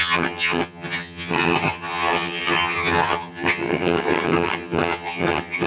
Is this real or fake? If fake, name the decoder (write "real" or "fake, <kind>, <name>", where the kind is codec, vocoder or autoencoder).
fake, vocoder, HiFi-GAN